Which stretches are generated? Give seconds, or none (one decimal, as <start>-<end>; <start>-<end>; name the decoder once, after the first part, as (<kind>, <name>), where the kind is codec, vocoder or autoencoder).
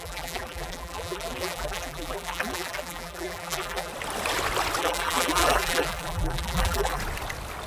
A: 0.0-3.9 (vocoder, BigVGAN v2); 4.8-7.0